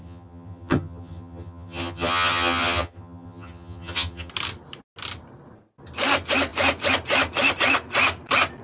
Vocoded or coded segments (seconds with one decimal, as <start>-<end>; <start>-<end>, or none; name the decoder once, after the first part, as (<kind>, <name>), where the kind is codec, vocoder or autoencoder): 0.0-4.3 (vocoder, HiFi-GAN)

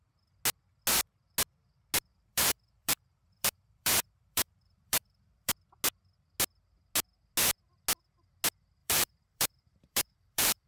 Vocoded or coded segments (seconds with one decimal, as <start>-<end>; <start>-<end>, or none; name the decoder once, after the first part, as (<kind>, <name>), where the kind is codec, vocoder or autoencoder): 2.1-5.5 (vocoder, BigVGAN v2); 8.8-10.7

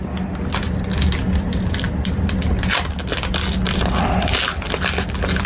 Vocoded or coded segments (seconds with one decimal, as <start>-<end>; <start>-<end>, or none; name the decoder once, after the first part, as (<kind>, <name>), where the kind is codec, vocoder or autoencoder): none